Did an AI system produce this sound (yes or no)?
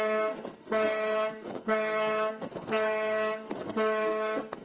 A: yes